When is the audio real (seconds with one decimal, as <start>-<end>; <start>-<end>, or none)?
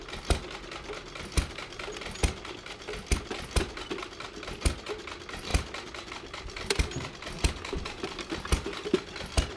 0.0-5.5; 6.1-9.6